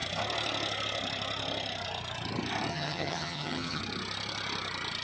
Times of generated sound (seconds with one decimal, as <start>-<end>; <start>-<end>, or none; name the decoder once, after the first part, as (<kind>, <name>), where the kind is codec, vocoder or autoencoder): 2.7-3.8 (vocoder, HiFi-GAN)